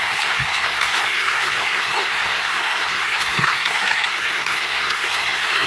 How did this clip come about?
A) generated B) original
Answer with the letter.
A